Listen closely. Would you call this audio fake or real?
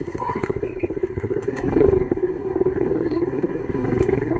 fake